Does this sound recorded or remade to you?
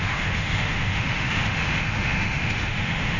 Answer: remade